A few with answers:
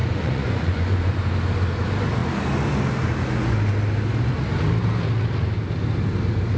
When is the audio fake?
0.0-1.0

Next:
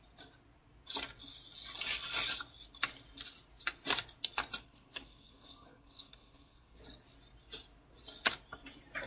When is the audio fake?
4.6-6.8

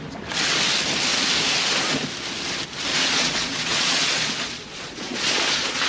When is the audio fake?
2.9-5.9

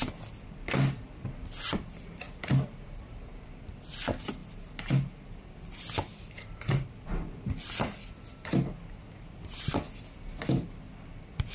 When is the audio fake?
none

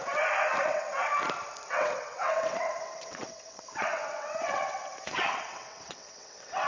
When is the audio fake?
0.6-1.1; 1.7-6.7

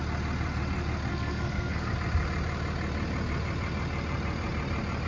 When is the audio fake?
1.1-1.9

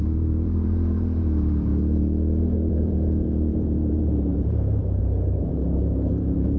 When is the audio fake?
0.0-1.7; 2.7-6.6

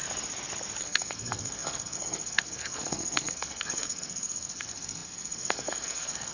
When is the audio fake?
0.8-6.3